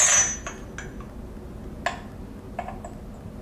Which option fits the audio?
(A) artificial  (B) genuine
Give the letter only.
B